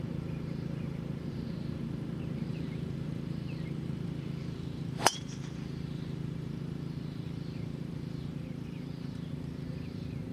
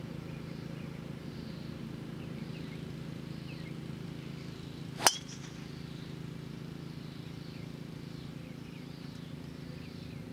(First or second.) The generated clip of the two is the first